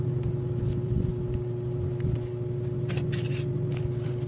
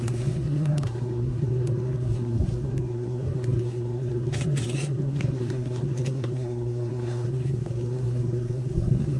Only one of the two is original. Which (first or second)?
first